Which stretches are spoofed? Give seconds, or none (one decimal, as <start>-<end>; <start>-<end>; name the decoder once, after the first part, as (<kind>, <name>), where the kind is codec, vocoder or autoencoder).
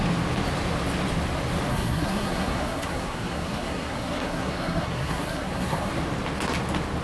1.7-5.9 (codec, SNAC)